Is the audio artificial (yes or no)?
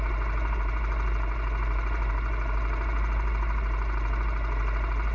no